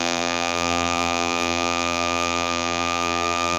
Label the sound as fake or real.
fake